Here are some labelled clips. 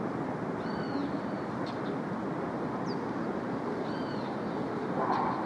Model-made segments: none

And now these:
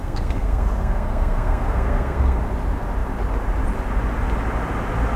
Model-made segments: 0.0-2.4 (codec, SNAC)

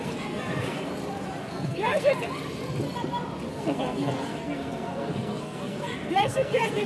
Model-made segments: 0.0-0.9 (codec, SNAC); 1.4-2.4; 3.5-6.9

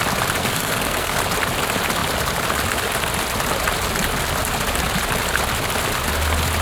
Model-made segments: 0.4-1.2 (codec, SNAC)

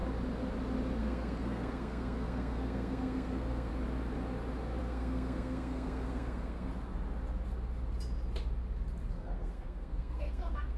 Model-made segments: 1.0-3.7 (codec, SNAC); 4.8-6.7; 9.1-10.8